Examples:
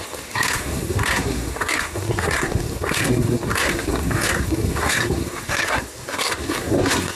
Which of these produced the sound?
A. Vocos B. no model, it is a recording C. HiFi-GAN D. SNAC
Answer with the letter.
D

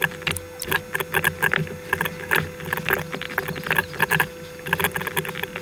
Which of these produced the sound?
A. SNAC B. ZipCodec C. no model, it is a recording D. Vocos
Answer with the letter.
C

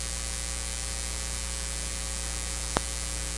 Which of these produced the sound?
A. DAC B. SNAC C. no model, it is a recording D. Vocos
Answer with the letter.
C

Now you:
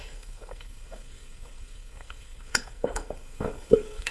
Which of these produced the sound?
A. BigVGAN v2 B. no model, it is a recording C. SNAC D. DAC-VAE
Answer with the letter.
C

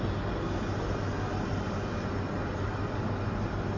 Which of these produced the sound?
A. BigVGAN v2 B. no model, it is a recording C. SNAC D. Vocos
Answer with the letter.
B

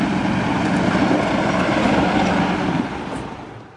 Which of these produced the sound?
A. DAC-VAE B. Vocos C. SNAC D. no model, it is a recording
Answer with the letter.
D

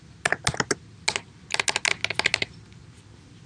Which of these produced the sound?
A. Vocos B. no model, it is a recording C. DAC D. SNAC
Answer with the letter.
B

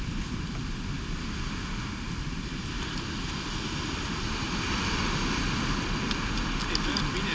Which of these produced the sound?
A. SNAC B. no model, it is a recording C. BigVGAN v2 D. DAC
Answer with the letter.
B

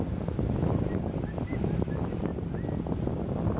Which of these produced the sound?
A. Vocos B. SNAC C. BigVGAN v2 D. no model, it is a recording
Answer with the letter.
D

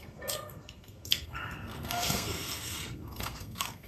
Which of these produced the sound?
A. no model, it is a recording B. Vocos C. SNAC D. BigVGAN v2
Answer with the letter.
C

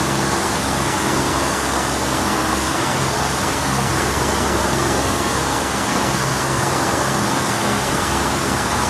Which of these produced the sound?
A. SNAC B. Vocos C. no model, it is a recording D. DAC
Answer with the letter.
A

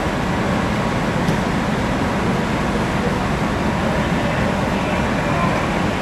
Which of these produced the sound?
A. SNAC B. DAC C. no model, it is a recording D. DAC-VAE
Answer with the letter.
C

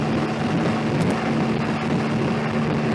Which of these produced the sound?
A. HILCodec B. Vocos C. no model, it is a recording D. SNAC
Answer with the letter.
C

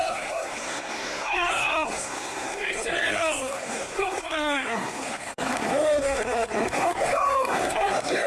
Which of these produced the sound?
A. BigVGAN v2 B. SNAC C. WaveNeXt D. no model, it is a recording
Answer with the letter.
B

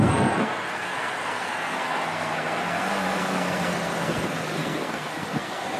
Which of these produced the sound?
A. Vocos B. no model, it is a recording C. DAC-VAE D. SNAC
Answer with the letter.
D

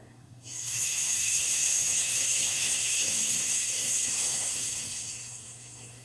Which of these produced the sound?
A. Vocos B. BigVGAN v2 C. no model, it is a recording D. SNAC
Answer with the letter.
D